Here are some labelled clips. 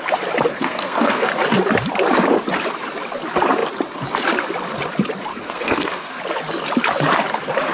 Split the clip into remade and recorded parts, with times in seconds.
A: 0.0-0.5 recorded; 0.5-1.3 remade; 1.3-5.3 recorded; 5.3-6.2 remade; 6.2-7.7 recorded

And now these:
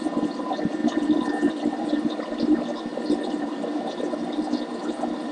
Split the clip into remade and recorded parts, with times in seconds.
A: 0.0-5.3 recorded

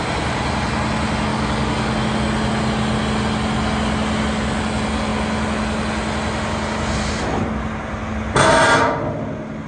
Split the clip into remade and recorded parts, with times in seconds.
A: 0.0-1.3 recorded; 1.3-1.9 remade; 1.9-9.7 recorded

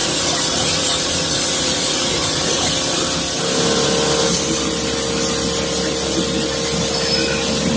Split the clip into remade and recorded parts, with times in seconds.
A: 0.0-2.7 remade; 2.7-7.8 recorded

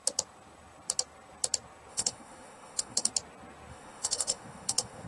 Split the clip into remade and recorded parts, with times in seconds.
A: 0.0-1.9 recorded; 1.9-3.1 remade; 3.1-3.7 recorded; 3.7-5.1 remade